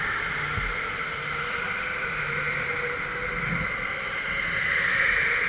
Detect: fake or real real